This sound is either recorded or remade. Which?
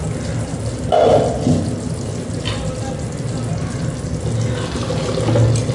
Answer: recorded